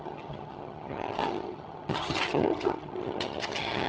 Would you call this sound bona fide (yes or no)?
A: no